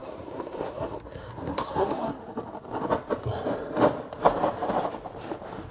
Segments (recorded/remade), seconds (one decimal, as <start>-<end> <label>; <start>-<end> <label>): 0.0-2.2 remade; 2.2-5.7 recorded